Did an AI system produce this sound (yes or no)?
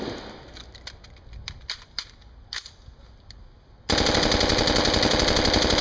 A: no